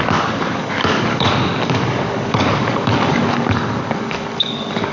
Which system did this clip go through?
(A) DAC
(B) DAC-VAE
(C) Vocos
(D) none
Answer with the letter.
A